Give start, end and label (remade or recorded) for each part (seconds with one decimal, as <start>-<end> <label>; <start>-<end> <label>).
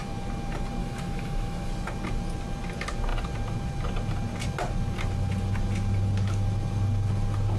0.0-0.8 recorded; 0.8-1.7 remade; 1.7-7.6 recorded